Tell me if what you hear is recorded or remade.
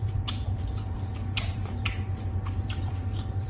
remade